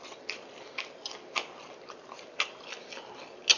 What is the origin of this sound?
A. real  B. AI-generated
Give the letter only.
A